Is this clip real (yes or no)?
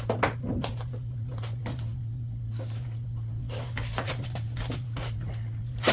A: yes